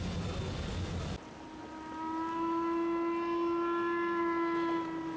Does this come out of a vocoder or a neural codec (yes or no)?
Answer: no